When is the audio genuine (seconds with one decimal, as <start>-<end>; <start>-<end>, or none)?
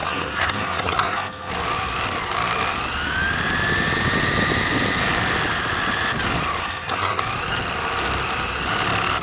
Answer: 1.5-6.6; 7.2-9.2